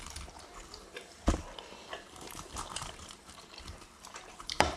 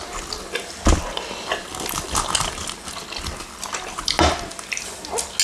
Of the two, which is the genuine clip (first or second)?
second